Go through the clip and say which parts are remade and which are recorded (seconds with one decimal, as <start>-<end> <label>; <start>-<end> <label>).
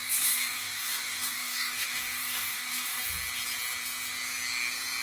0.0-3.0 remade; 3.0-5.0 recorded